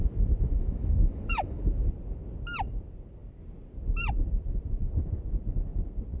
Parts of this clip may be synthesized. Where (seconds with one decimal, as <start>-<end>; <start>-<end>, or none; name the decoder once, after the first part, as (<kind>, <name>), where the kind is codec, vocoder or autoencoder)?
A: 0.5-1.6 (autoencoder, DAC-VAE)